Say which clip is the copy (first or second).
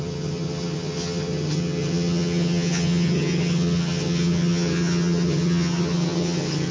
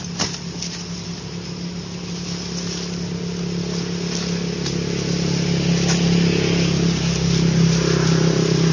first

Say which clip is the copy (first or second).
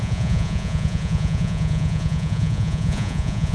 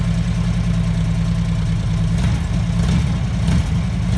first